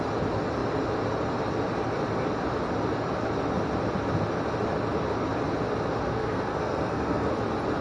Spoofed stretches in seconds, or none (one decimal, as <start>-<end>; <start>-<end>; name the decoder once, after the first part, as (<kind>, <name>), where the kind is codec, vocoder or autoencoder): 6.1-7.3 (codec, SNAC)